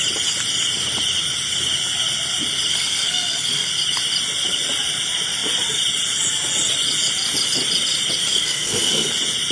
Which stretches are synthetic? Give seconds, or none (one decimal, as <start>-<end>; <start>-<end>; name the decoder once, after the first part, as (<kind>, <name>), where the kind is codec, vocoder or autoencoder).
2.7-3.7 (codec, SNAC); 8.2-9.1

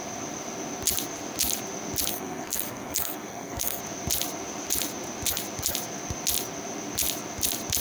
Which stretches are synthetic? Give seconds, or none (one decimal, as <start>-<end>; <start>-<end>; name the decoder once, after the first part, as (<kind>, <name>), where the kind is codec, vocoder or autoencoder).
2.1-3.8 (codec, SNAC)

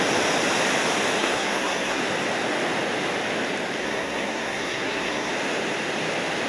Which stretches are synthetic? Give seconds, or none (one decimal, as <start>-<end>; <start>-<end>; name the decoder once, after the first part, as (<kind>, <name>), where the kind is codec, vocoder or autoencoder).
1.2-2.0 (codec, SNAC); 3.8-5.3

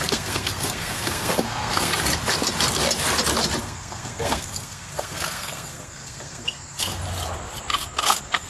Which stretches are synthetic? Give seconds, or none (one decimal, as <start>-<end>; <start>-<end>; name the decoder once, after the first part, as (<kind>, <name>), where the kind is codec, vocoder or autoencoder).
0.0-1.9 (codec, SNAC); 3.6-7.0; 7.7-8.5

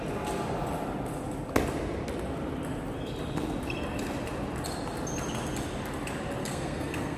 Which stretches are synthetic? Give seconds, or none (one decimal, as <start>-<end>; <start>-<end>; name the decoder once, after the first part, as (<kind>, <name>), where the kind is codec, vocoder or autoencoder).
6.4-7.2 (codec, SNAC)

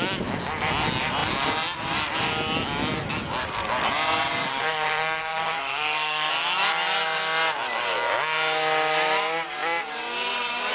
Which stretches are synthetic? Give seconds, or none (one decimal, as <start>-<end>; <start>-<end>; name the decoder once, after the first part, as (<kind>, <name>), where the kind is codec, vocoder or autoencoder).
4.5-6.3 (codec, SNAC)

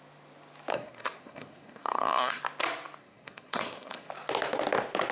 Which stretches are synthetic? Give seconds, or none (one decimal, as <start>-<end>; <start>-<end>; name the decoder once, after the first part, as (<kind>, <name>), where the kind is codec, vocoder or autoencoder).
0.7-2.4 (codec, SNAC); 3.0-4.1

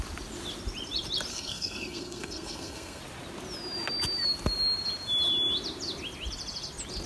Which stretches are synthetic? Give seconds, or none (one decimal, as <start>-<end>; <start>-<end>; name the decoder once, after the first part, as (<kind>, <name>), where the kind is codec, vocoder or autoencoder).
1.3-3.0 (codec, SNAC)